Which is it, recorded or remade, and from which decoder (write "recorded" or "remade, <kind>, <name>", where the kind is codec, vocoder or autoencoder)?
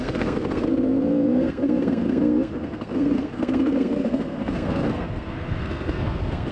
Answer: remade, codec, SNAC